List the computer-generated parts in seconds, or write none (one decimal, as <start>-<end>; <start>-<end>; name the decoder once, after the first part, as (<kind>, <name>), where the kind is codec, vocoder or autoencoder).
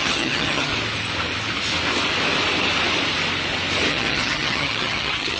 0.0-0.7 (vocoder, HiFi-GAN); 3.9-5.4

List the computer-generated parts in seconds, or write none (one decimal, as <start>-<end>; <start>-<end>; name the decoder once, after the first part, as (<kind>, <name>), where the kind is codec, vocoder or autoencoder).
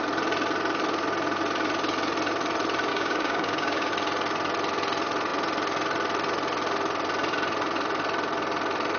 2.9-3.9 (codec, DAC)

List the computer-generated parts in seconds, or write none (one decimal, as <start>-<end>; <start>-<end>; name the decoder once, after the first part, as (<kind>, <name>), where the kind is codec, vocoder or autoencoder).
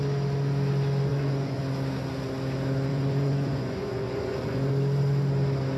1.1-1.6 (vocoder, Vocos); 2.9-4.7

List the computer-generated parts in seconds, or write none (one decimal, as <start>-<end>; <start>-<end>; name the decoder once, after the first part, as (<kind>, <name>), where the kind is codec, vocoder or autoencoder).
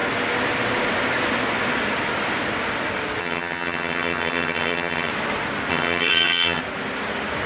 3.2-5.1 (vocoder, HiFi-GAN); 5.7-6.6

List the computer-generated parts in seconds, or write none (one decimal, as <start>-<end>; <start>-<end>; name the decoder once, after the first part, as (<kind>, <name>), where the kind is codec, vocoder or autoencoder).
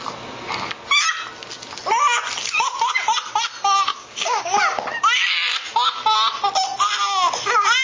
3.9-4.6 (codec, DAC)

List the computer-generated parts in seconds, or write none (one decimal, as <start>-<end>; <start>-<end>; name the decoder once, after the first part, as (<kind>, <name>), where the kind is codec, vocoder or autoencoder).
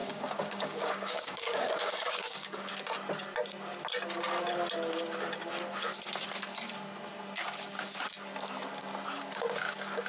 0.0-2.7 (codec, DAC)